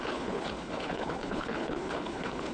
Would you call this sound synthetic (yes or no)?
yes